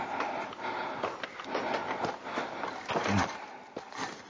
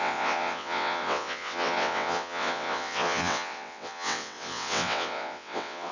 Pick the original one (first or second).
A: first